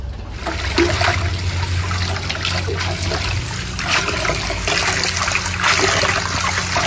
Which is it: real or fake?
real